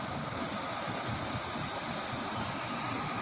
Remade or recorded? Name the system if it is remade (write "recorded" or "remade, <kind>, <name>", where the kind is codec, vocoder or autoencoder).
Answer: recorded